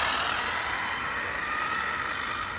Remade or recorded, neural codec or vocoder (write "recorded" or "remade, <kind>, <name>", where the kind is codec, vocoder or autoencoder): recorded